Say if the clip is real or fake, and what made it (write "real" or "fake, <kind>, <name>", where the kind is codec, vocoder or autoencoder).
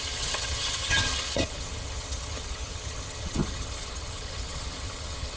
fake, vocoder, HiFi-GAN